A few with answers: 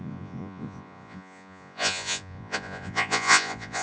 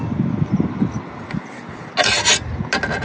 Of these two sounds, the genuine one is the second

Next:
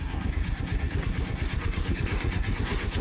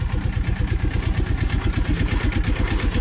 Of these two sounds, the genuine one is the second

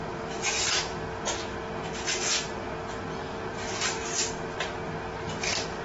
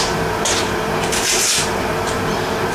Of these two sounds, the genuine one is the first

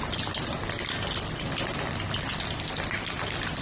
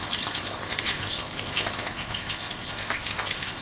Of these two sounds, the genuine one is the first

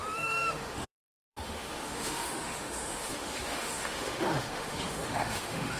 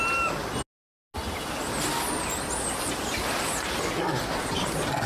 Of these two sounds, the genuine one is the second